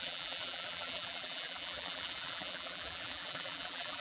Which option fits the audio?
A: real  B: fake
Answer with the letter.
B